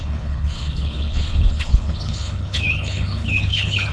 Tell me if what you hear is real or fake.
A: fake